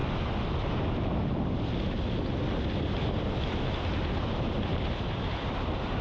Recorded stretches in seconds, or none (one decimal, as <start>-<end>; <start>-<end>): 0.0-4.7; 5.6-6.0